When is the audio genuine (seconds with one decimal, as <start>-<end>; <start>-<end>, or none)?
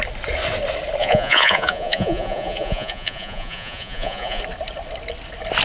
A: 0.0-1.0; 4.4-5.6